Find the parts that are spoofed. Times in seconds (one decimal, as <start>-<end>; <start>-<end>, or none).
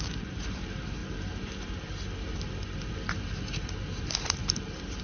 0.0-1.0; 4.0-4.4